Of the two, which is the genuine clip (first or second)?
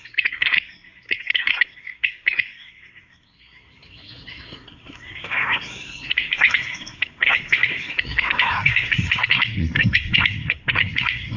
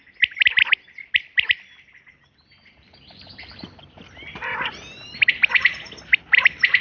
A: second